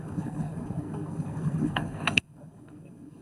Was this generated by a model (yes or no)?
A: yes